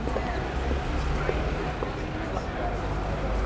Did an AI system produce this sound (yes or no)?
no